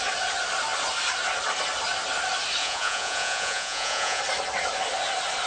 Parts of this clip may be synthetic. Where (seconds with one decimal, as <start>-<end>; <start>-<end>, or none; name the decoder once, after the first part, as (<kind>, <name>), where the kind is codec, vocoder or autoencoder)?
2.6-4.2 (vocoder, Vocos)